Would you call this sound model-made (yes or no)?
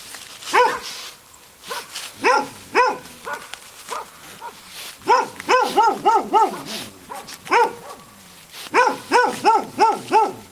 no